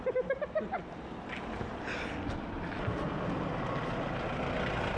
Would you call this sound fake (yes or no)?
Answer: no